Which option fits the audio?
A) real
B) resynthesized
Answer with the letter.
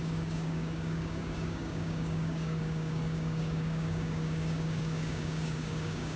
B